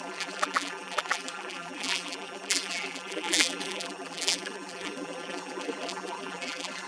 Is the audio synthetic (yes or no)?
yes